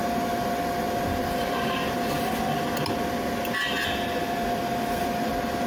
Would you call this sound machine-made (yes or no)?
no